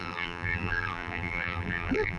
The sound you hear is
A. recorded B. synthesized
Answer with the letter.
B